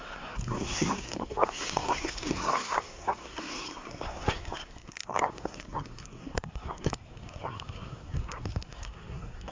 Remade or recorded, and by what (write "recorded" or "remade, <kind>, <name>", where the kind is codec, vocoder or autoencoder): remade, codec, SNAC